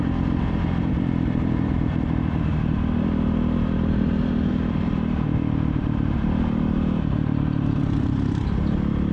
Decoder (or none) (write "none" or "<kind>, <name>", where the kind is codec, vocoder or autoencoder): vocoder, BigVGAN v2